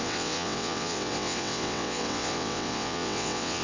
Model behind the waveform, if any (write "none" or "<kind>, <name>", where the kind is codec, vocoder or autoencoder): vocoder, WaveNeXt